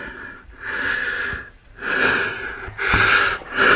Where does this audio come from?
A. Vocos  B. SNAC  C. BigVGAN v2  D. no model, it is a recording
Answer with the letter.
D